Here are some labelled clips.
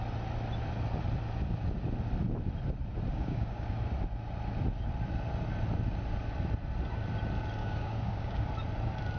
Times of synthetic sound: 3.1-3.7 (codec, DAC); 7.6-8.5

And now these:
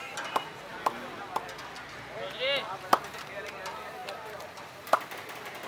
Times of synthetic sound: none

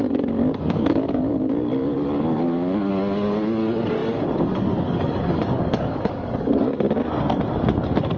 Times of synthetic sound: 0.0-6.6 (codec, DAC)

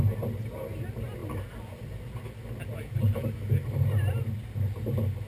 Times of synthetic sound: none

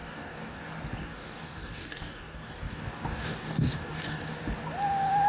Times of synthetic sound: 0.0-0.6 (codec, DAC); 1.0-4.2

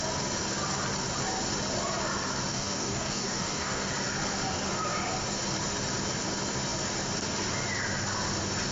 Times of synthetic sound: 2.5-3.9 (codec, DAC)

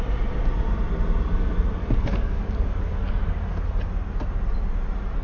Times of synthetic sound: 1.8-3.1 (codec, DAC)